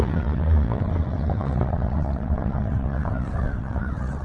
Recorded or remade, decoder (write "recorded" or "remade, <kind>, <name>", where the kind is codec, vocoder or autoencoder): remade, vocoder, WaveNeXt